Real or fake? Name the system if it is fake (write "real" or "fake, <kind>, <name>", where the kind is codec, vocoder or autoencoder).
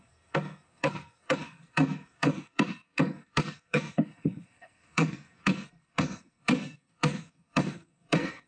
fake, codec, SNAC